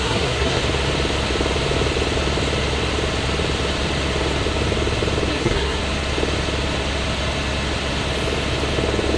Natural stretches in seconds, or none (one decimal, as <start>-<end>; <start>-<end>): 0.6-5.3; 5.8-9.2